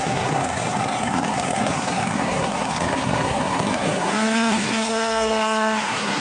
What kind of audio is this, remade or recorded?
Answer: remade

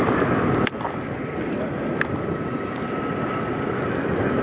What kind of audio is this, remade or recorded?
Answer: recorded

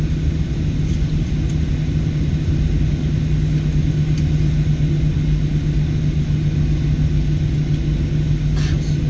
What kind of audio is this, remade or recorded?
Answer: recorded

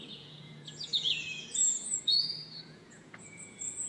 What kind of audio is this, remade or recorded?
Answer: remade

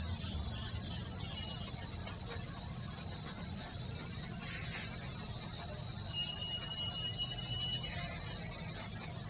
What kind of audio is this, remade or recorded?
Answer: recorded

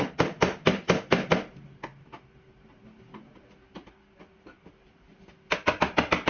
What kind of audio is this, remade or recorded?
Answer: recorded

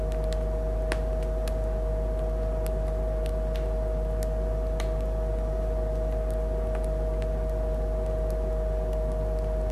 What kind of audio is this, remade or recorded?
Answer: recorded